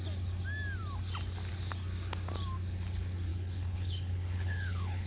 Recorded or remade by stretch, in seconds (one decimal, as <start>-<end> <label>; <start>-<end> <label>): 0.0-3.3 recorded; 3.3-5.1 remade